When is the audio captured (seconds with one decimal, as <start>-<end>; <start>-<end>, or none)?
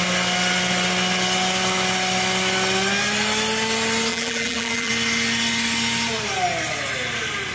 0.0-4.1; 4.9-7.5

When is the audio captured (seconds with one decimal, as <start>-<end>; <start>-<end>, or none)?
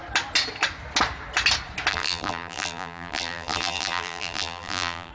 0.0-1.9